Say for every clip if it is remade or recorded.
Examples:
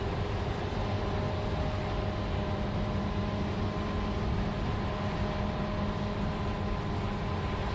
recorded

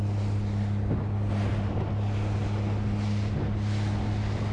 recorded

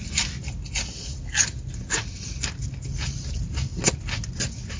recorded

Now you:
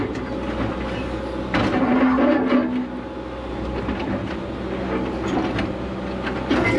recorded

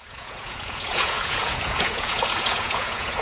remade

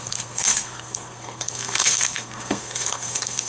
remade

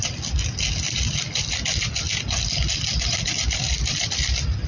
recorded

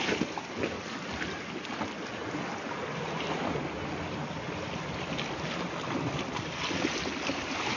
recorded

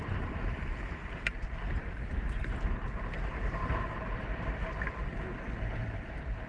recorded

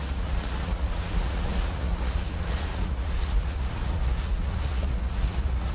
remade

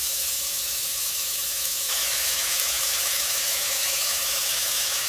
remade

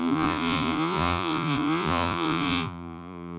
remade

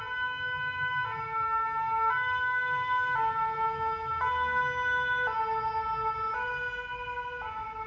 recorded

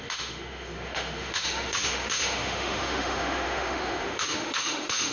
remade